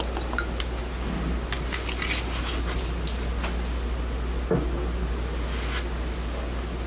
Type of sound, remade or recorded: recorded